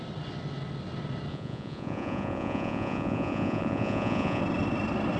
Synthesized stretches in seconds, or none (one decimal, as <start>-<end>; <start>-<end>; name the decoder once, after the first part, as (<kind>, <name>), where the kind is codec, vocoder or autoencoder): 1.3-4.4 (vocoder, Vocos)